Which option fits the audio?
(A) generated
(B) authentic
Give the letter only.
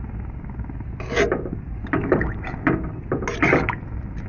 B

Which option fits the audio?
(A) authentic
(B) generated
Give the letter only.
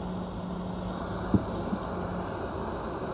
A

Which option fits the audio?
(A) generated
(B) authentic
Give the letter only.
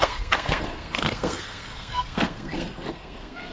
A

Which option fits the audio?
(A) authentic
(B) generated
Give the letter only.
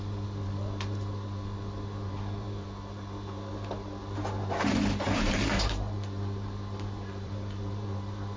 B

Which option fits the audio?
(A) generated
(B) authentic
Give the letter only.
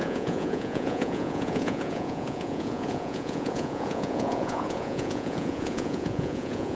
A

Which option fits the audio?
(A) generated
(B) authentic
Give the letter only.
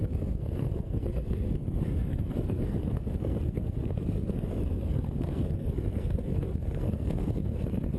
A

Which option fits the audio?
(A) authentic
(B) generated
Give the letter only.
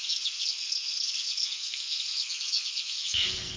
B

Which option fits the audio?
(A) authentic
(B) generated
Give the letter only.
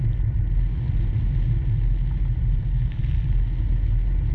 A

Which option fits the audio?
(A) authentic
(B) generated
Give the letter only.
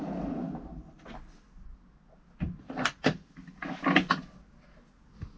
A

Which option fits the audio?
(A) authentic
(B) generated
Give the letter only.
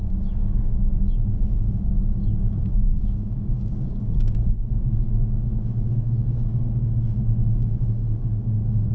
B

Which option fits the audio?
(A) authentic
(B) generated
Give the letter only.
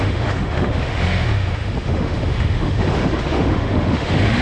B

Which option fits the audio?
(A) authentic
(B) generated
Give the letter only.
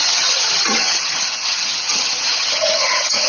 B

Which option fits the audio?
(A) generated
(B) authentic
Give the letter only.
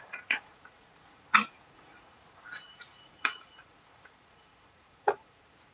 A